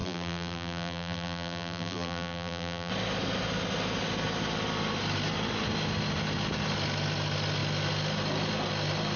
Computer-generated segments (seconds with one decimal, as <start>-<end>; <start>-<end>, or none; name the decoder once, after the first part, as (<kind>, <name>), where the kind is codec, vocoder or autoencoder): 0.0-2.9 (vocoder, BigVGAN v2)